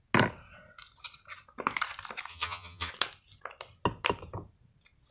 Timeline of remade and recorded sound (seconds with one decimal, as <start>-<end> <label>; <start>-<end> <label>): 0.0-2.3 recorded; 2.3-2.9 remade; 2.9-5.1 recorded